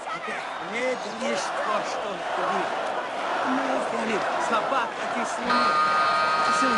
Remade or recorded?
recorded